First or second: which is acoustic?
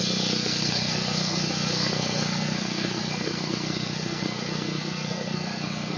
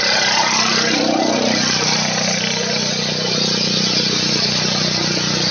second